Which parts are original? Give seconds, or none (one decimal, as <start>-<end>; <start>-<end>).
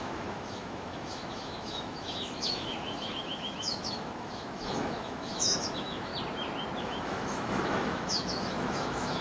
6.1-6.8